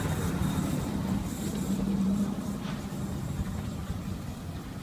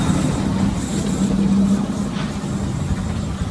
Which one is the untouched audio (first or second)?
second